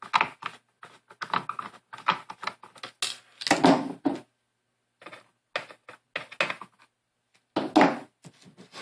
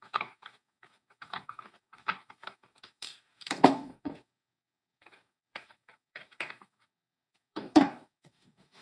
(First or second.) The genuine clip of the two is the first